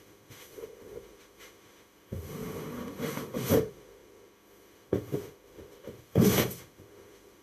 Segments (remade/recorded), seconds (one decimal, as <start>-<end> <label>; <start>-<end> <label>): 0.0-7.4 remade